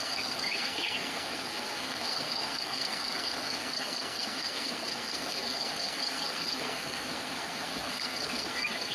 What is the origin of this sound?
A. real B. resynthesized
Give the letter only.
B